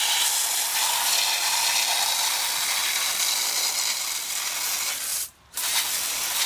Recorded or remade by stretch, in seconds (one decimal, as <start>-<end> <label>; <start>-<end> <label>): 0.0-5.1 recorded; 5.1-5.8 remade; 5.8-6.5 recorded